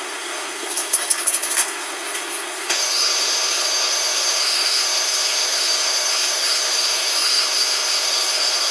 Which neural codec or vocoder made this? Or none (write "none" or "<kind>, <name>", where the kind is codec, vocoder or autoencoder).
codec, SNAC